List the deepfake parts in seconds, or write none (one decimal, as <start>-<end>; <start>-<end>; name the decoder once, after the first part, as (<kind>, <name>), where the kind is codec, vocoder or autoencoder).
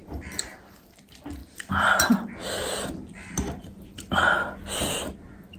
none